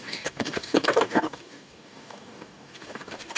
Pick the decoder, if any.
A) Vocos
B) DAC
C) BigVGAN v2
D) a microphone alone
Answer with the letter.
B